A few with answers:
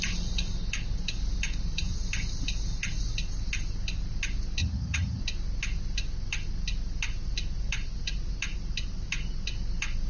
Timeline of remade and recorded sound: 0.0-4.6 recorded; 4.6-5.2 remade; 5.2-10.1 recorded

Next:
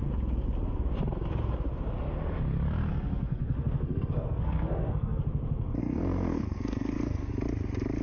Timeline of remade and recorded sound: 0.0-2.9 recorded; 2.9-5.2 remade; 5.2-5.8 recorded; 5.8-7.3 remade; 7.3-8.0 recorded

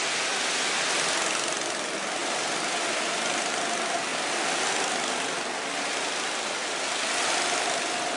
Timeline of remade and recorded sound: 0.0-2.2 recorded; 2.2-3.6 remade; 3.6-8.2 recorded

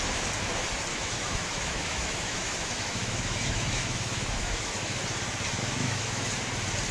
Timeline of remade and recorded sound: 0.0-0.9 recorded; 0.9-5.0 remade; 5.0-5.6 recorded; 5.6-6.3 remade; 6.3-6.9 recorded

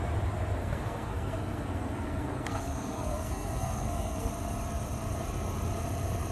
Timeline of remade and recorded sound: 0.0-0.6 recorded; 0.6-4.3 remade; 4.3-6.3 recorded

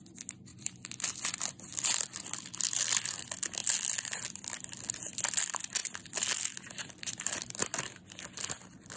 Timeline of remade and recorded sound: 0.0-0.5 recorded; 0.5-3.2 remade; 3.2-5.8 recorded; 5.8-8.5 remade; 8.5-9.0 recorded